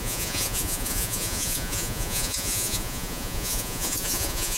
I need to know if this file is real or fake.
fake